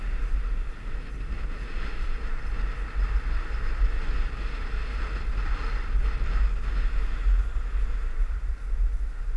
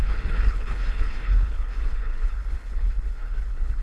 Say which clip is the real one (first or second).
first